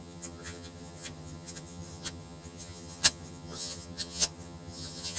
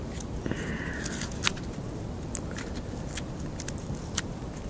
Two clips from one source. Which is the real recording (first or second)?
second